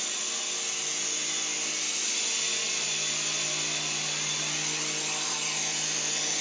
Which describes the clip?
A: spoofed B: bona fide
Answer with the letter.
B